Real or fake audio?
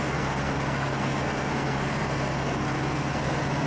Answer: fake